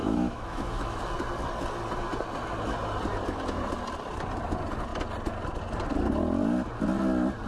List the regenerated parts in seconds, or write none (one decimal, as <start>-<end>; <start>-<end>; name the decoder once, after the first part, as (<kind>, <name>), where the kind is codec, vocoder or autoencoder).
0.0-1.0 (autoencoder, DAC-VAE)